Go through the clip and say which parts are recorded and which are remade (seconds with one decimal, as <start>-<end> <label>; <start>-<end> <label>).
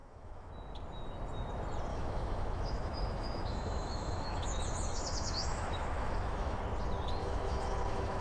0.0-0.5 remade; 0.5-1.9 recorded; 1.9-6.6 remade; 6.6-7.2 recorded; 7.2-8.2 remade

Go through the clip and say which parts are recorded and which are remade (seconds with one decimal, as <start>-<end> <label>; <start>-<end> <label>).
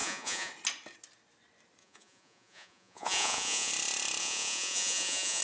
0.0-0.5 remade; 0.5-1.8 recorded; 1.8-3.7 remade; 3.7-4.2 recorded; 4.2-5.4 remade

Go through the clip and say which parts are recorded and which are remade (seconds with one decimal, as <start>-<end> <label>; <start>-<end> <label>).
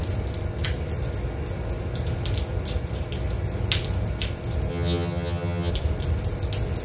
0.0-4.7 recorded; 4.7-5.7 remade; 5.7-6.8 recorded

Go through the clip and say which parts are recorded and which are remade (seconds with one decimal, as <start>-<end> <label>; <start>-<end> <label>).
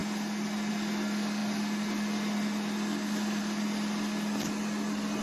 0.0-5.2 recorded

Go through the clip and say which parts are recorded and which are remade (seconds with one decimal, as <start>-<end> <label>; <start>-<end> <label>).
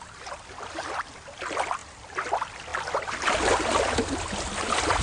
0.0-5.0 recorded